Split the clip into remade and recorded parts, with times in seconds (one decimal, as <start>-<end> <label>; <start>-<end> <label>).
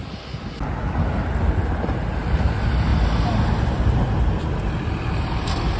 0.0-5.8 recorded